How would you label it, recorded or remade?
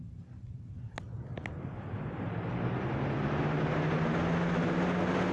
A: recorded